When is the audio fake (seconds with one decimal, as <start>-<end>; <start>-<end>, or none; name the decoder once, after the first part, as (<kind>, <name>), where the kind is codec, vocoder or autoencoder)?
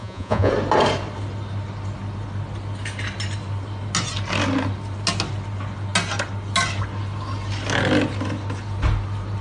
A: 0.0-0.5 (vocoder, Vocos)